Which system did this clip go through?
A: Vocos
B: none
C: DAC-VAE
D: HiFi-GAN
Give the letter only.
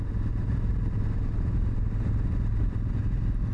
B